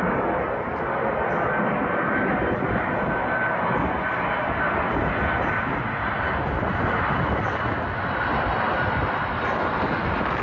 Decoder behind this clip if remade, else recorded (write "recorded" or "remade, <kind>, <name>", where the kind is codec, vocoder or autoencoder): recorded